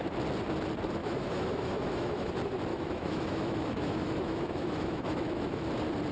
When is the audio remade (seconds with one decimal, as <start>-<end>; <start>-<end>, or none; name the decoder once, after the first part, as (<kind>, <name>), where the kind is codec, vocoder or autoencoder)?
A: 1.0-2.3 (autoencoder, DAC-VAE); 2.7-5.6